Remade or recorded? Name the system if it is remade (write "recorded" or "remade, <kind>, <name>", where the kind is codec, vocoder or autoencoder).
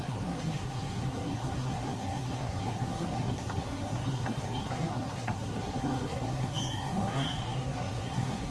remade, codec, SNAC